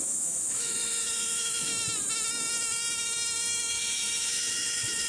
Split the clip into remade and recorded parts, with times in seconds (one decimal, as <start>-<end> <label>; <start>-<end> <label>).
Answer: 0.0-1.7 remade; 1.7-3.7 recorded; 3.7-5.1 remade